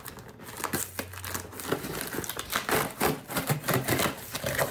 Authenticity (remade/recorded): recorded